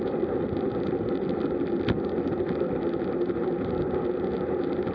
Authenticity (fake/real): real